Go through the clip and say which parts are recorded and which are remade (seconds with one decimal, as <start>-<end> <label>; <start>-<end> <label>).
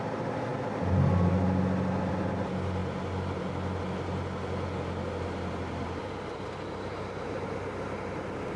0.0-8.6 recorded